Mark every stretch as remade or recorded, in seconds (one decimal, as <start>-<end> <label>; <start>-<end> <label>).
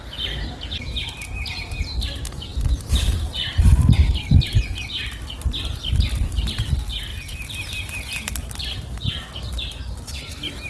0.0-10.7 recorded